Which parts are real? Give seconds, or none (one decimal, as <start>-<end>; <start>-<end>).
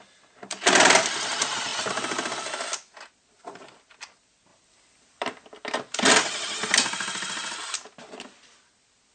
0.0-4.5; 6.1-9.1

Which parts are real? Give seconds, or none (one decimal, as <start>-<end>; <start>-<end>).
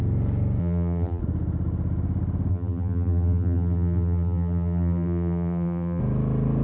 0.0-0.6; 1.2-2.5; 6.0-6.6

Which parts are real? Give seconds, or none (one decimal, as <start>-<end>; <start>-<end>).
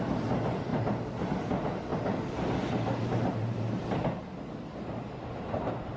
0.0-0.7; 1.3-1.9; 4.2-5.2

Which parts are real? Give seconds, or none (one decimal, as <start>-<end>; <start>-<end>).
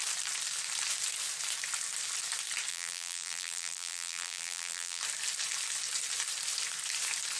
0.0-2.7; 5.0-7.4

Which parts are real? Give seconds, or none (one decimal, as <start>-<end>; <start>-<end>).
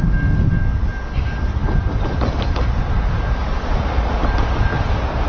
4.7-5.3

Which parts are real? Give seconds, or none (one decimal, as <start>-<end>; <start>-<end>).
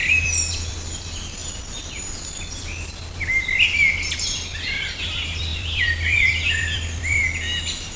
1.4-4.9; 7.2-8.0